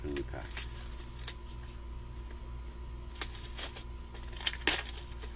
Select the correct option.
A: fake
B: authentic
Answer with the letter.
B